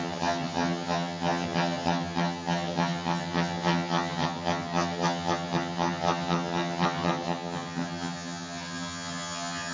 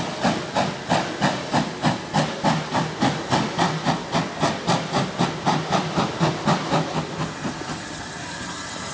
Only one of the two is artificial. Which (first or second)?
first